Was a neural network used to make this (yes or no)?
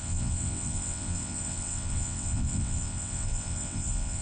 yes